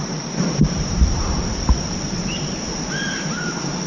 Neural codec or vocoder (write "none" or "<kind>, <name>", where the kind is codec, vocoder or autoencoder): vocoder, BigVGAN v2